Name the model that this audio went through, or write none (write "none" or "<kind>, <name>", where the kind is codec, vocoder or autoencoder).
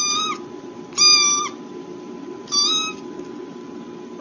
none